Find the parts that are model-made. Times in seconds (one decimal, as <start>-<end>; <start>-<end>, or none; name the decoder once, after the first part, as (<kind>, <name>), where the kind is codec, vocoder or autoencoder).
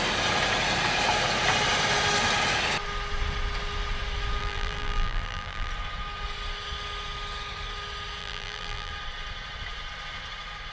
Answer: 4.4-5.7 (vocoder, BigVGAN v2); 8.2-8.9